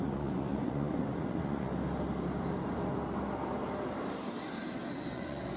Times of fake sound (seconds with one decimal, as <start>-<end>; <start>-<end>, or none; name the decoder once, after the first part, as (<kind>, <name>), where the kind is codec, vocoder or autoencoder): 0.0-1.7 (vocoder, Vocos); 5.1-5.6